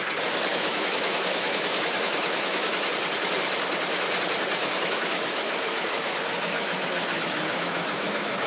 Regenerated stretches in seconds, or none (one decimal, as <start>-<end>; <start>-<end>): 0.5-2.9; 4.6-8.5

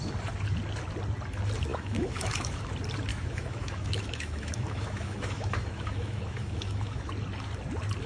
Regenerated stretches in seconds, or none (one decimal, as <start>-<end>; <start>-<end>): 1.7-2.6; 3.1-7.1

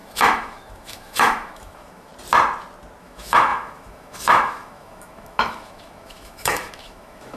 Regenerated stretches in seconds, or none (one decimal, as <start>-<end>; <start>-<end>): 0.0-2.1; 3.0-7.4